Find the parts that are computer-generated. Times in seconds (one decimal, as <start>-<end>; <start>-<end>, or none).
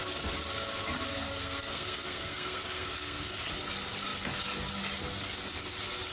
1.1-3.4